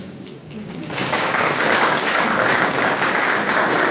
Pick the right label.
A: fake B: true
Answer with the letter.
A